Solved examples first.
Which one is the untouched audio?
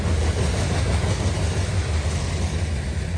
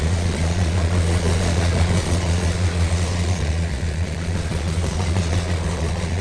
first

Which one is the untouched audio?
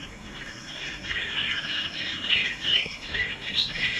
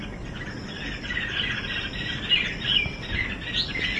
second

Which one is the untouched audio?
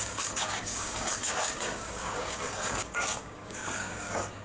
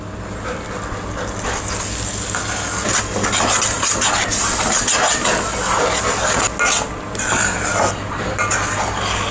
second